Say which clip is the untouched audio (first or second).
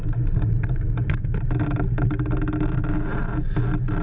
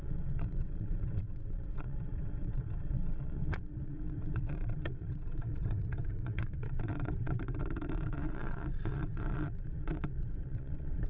first